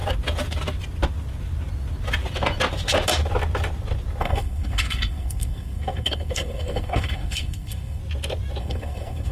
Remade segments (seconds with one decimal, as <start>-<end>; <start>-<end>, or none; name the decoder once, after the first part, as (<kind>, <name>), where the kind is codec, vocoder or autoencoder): 4.2-8.0 (codec, SNAC); 8.6-9.3